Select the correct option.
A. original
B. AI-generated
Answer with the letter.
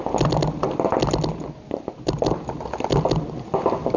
A